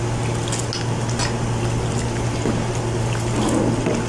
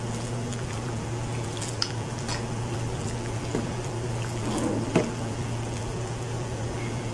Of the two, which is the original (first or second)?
first